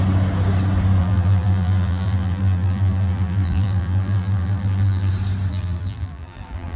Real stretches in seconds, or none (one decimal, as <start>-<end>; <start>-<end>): 0.0-1.0; 5.1-5.5